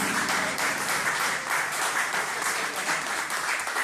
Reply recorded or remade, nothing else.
remade